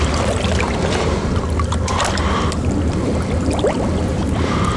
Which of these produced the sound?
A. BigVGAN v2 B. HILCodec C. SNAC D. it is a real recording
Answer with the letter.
D